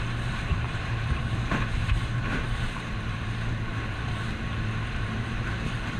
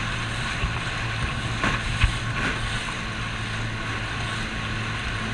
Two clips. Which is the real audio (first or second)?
second